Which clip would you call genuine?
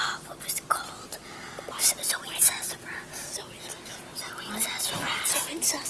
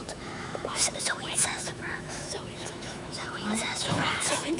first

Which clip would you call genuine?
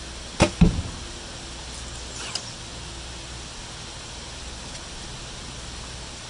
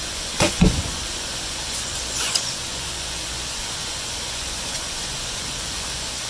first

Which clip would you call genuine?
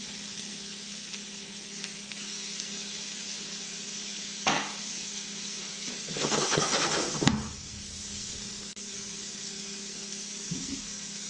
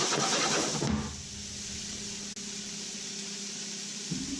second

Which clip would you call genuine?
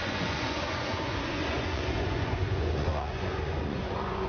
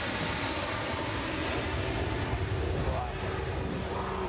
second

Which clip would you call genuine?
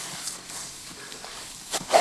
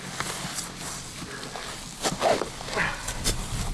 second